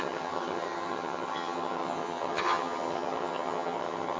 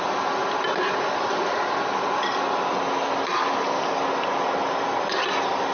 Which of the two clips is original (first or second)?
second